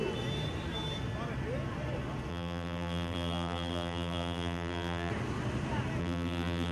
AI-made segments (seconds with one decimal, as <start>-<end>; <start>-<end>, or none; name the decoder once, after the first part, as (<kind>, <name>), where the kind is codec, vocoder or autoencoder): 2.3-5.1 (vocoder, BigVGAN v2); 6.0-6.7

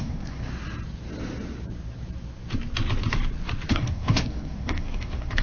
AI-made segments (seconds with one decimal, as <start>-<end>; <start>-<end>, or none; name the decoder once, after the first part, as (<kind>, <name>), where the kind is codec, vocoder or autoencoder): 0.0-0.5 (codec, SNAC); 3.7-5.4

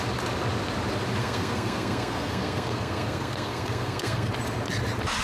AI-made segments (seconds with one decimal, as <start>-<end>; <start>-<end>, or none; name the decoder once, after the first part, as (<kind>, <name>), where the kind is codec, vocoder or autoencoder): 1.2-4.3 (codec, SNAC)

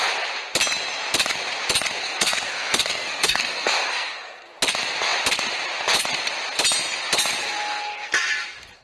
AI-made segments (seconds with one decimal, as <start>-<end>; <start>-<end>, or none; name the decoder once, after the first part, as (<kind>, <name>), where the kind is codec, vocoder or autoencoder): 2.0-4.5 (codec, SNAC); 7.4-8.1